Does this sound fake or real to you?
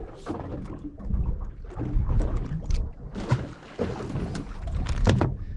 real